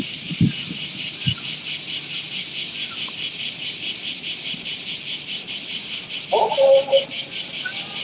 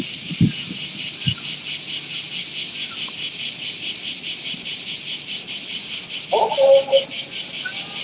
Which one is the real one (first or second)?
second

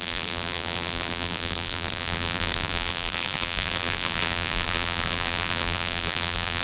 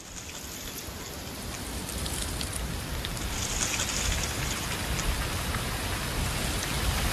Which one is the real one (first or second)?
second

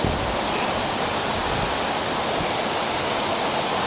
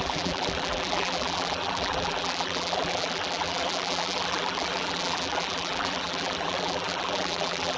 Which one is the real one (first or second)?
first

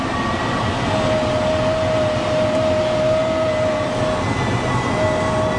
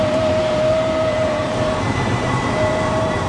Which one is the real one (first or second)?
first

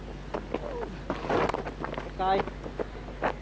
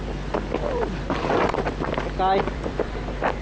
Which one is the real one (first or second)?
first